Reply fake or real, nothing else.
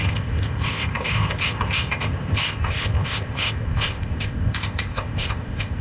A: fake